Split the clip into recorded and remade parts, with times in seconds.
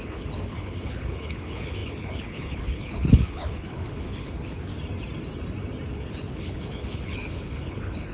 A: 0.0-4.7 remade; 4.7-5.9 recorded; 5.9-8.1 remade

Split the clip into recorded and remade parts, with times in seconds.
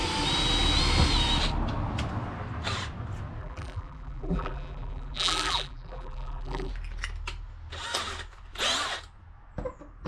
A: 0.0-3.4 recorded; 3.4-6.7 remade; 6.7-10.1 recorded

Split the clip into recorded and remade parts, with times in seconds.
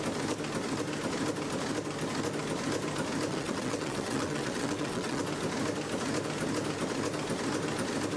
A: 0.0-3.3 recorded; 3.3-5.2 remade; 5.2-8.2 recorded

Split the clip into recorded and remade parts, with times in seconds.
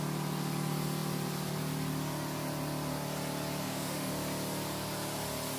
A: 0.0-3.6 recorded; 3.6-4.1 remade; 4.1-5.6 recorded